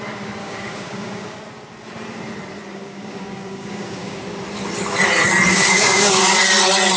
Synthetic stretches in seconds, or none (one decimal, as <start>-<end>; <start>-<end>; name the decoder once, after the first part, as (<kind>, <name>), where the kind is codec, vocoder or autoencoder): 0.4-1.4 (codec, DAC); 2.7-4.2; 5.5-6.2